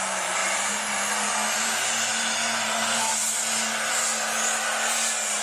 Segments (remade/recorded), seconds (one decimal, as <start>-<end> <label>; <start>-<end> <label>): 0.0-5.4 recorded